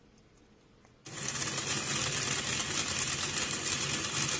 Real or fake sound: real